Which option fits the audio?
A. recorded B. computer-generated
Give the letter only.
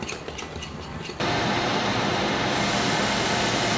B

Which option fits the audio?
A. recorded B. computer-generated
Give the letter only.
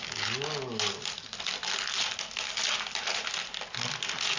A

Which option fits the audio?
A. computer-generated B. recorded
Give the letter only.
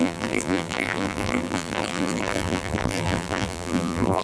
A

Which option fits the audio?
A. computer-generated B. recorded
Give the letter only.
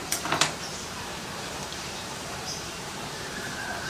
A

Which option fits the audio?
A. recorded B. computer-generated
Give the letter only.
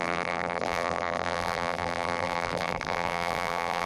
B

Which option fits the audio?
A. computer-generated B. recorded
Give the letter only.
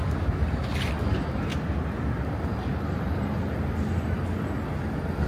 B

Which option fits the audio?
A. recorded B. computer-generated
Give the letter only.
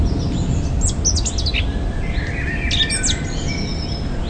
A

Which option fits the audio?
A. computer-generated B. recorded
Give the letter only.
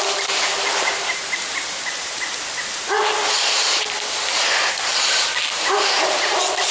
B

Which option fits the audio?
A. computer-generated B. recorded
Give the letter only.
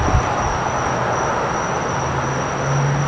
B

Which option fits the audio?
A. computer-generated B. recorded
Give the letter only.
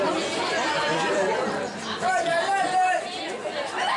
B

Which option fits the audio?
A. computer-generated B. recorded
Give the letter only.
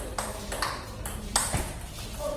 B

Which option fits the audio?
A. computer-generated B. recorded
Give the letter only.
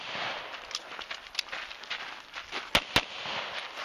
B